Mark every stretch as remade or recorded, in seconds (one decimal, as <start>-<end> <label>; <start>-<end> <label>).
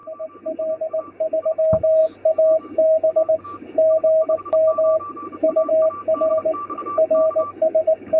0.0-0.7 recorded; 0.7-5.7 remade; 5.7-6.3 recorded; 6.3-8.2 remade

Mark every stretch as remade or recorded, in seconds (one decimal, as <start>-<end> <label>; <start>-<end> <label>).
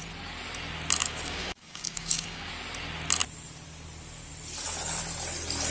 0.0-1.0 recorded; 1.0-2.5 remade; 2.5-5.7 recorded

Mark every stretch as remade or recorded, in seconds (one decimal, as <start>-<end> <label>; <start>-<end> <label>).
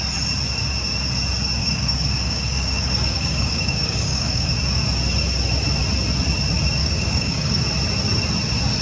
0.0-1.6 recorded; 1.6-4.5 remade; 4.5-6.8 recorded; 6.8-7.6 remade; 7.6-8.8 recorded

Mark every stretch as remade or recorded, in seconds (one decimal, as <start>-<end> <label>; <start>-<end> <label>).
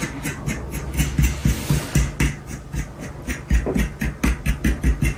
0.0-5.2 recorded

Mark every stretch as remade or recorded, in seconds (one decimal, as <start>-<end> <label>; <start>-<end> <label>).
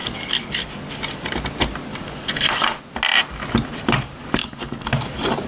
0.0-0.6 remade; 0.6-1.9 recorded; 1.9-2.8 remade; 2.8-4.4 recorded; 4.4-4.9 remade; 4.9-5.5 recorded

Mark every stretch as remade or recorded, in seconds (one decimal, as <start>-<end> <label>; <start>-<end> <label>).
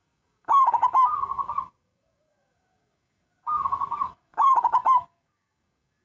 0.0-6.0 remade